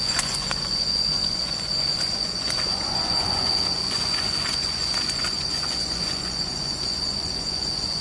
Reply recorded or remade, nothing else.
remade